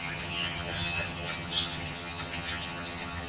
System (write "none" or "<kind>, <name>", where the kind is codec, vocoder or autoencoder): vocoder, HiFi-GAN